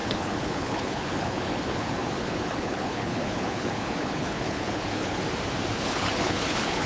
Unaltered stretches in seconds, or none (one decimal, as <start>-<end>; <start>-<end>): 5.2-5.7